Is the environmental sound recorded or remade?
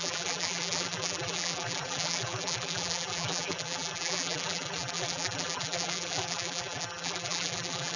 remade